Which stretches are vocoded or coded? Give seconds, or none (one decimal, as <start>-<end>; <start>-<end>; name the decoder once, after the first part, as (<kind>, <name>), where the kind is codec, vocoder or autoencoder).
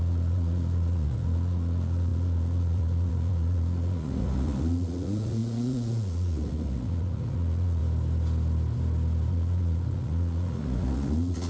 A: 0.0-7.8 (vocoder, Vocos); 9.3-11.5